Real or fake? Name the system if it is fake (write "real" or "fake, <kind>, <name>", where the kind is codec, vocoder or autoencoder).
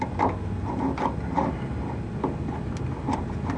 real